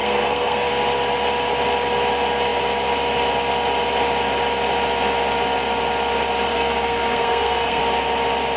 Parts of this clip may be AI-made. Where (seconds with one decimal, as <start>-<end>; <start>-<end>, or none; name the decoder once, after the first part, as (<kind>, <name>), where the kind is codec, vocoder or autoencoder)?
0.0-0.7 (codec, SNAC); 6.5-7.8